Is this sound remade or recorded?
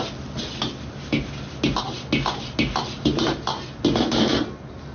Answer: recorded